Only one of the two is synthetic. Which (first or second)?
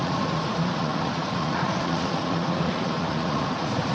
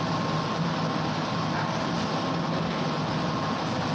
first